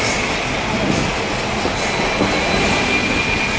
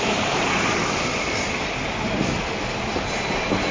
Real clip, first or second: first